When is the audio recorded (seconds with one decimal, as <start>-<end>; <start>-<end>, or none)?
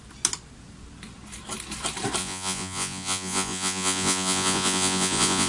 0.0-2.2